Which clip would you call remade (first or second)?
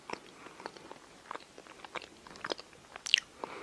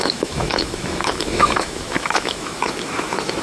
second